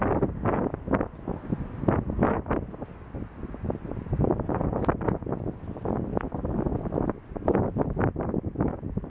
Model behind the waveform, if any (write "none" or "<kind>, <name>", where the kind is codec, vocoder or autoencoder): none